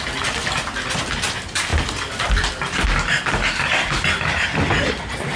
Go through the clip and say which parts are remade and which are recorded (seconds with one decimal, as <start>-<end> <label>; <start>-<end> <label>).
0.0-5.4 recorded